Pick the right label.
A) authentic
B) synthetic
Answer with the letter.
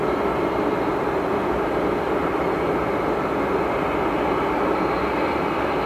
A